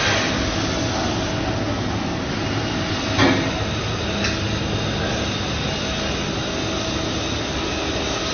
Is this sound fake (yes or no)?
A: no